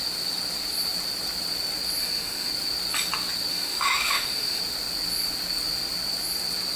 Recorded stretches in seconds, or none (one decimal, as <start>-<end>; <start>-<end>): 0.0-2.0; 2.5-3.5; 4.6-6.8